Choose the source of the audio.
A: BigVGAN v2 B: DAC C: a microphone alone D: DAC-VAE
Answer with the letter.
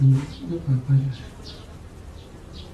A